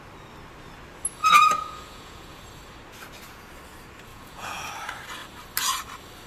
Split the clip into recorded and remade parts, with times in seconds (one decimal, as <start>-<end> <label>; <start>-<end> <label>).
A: 0.0-1.2 recorded; 1.2-2.4 remade; 2.4-4.1 recorded; 4.1-4.7 remade; 4.7-6.3 recorded